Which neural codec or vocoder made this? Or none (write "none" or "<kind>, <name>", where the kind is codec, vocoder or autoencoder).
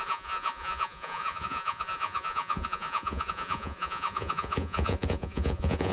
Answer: vocoder, Vocos